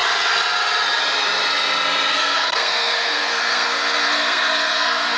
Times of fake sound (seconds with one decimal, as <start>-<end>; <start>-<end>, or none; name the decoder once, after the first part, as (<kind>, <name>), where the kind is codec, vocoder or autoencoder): 2.1-5.2 (codec, SNAC)